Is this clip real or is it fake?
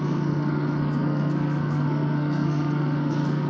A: fake